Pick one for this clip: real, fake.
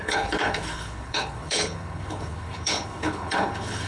fake